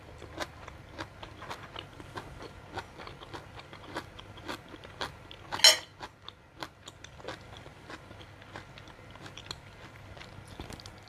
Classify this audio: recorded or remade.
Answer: recorded